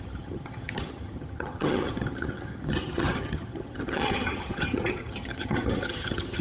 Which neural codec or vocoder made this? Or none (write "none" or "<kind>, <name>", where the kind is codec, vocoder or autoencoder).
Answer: vocoder, HiFi-GAN